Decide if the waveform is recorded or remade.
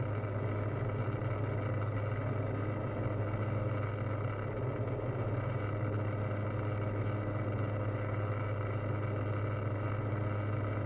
recorded